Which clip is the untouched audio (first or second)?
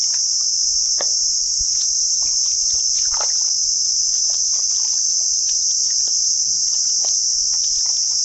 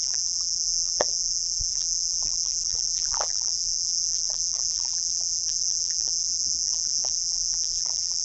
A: first